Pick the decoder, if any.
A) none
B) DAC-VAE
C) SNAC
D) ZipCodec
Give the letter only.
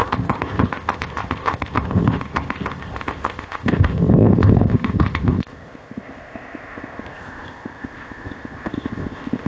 D